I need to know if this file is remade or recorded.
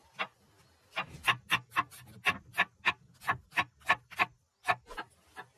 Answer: recorded